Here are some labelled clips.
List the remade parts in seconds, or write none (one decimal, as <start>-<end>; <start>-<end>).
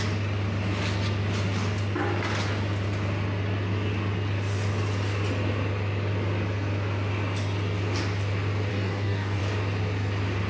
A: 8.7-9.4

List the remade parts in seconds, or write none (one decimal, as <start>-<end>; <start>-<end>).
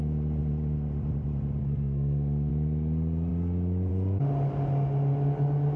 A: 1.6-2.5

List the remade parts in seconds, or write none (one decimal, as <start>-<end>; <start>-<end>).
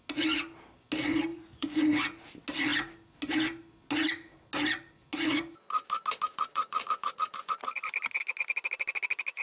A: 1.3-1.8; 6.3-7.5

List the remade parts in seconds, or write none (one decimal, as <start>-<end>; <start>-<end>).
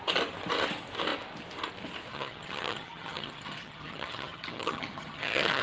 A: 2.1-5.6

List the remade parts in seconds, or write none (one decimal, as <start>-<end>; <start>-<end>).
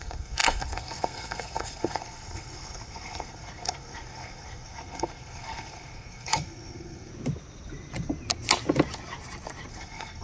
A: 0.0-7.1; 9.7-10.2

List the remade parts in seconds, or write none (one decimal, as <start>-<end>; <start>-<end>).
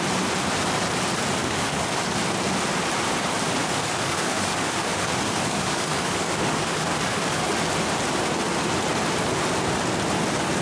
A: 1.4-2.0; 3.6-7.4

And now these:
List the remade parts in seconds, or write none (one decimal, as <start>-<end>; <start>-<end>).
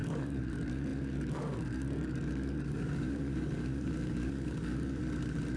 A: 0.0-5.0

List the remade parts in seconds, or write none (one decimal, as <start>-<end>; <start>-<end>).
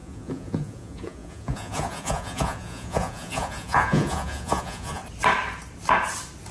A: 0.0-5.0